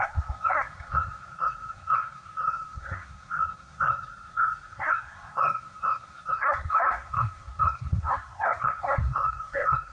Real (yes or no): no